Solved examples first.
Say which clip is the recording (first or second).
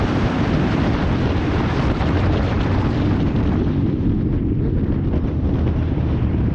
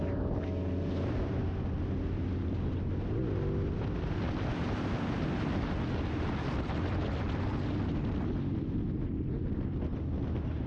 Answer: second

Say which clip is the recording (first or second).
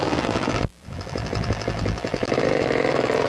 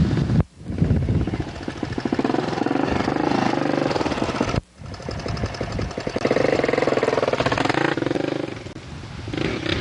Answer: second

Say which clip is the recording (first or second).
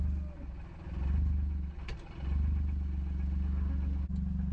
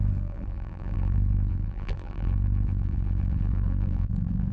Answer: first